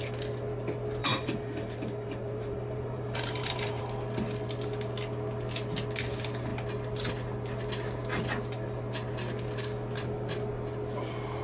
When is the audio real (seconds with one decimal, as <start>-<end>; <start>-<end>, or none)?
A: 0.0-1.0; 3.8-11.4